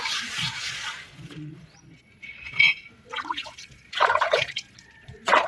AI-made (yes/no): yes